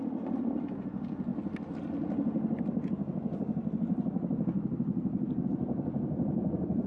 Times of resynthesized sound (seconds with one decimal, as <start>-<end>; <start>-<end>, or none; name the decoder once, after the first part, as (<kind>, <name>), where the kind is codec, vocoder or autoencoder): none